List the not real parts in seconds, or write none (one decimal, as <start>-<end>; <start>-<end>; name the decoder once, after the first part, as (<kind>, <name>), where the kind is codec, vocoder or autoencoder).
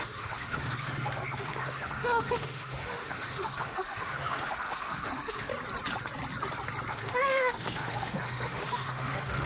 0.0-5.5 (autoencoder, DAC-VAE); 6.9-9.5